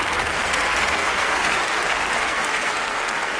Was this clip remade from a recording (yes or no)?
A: yes